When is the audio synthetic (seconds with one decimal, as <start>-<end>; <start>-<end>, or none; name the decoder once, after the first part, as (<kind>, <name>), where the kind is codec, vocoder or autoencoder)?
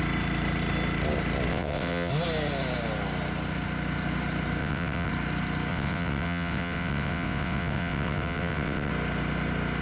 1.5-2.1 (vocoder, WaveNeXt); 4.6-5.1; 5.7-8.9